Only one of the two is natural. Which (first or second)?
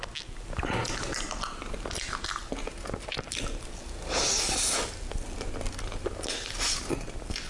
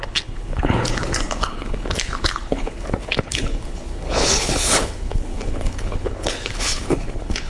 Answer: first